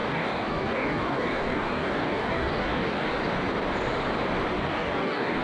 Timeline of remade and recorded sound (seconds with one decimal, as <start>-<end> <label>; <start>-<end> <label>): 0.0-3.2 remade; 3.2-4.5 recorded; 4.5-5.4 remade